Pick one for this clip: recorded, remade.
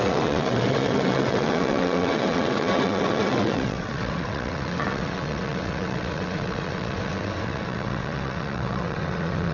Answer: remade